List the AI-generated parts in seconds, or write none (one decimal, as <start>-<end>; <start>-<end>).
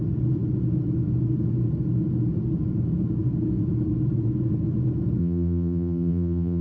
5.2-6.6